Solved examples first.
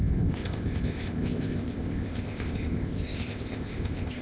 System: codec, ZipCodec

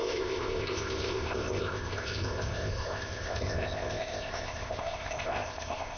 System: codec, ZipCodec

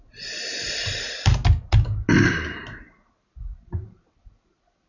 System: none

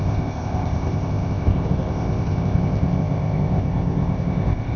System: codec, ZipCodec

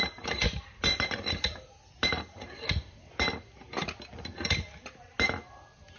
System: none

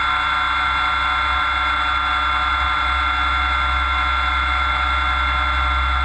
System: none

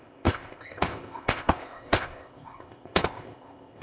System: codec, ZipCodec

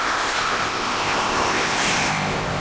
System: codec, ZipCodec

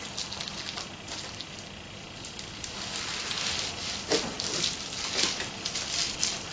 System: none